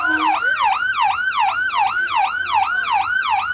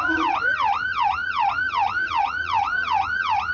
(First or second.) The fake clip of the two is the second